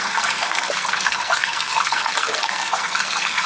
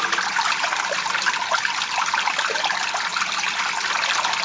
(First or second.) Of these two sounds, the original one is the second